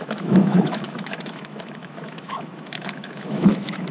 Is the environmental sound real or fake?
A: fake